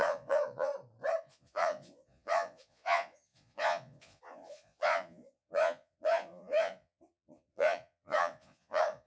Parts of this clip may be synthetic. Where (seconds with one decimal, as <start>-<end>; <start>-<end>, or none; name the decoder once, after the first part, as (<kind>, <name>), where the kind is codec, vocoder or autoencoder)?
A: 0.0-0.7 (vocoder, Vocos); 1.2-9.1